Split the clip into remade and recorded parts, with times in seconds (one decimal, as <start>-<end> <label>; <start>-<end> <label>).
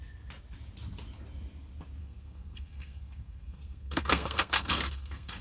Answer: 0.0-2.0 recorded; 2.0-5.4 remade